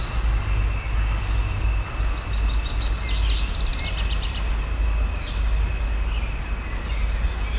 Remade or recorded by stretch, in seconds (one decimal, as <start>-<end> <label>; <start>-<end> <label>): 0.0-7.6 recorded